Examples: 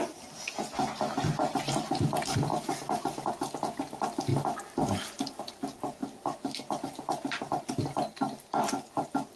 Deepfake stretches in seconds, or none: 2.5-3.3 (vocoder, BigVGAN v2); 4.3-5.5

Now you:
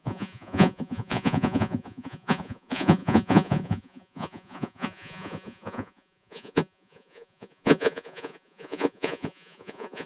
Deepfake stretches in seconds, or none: 0.0-10.1 (vocoder, Vocos)

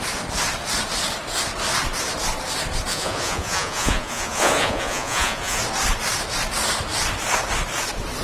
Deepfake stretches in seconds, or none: 2.9-5.6 (vocoder, Vocos)

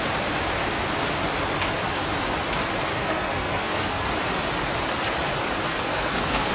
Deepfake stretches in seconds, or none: 2.9-4.1 (codec, SNAC); 5.7-6.5

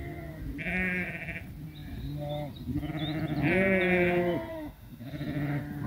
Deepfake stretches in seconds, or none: 4.5-5.1 (autoencoder, DAC-VAE)